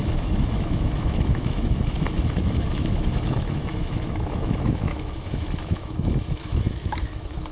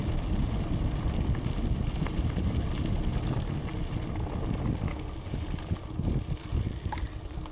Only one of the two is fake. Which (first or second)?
first